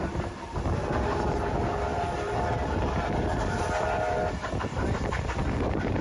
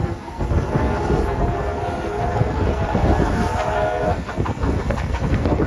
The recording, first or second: first